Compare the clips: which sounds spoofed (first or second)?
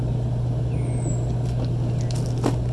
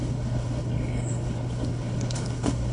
second